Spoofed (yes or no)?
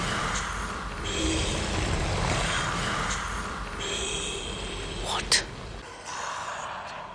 no